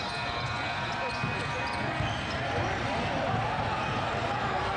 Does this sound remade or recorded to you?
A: recorded